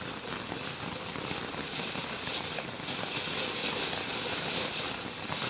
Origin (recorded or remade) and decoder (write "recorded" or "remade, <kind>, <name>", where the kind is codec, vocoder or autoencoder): recorded